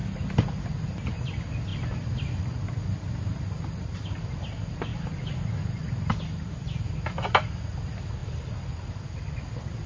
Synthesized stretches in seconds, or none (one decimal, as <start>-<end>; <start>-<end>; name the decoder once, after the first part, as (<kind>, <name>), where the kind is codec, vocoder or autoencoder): 0.0-1.1 (vocoder, BigVGAN v2); 1.7-2.4; 8.2-8.9